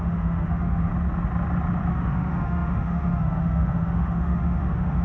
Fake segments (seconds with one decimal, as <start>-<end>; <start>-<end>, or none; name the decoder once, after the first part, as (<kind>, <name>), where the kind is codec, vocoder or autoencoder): 0.0-0.9 (autoencoder, DAC-VAE); 1.9-5.0